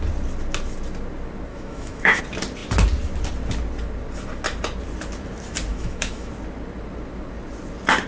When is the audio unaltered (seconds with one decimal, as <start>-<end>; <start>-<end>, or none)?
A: 0.0-1.5; 2.2-5.7; 6.3-8.1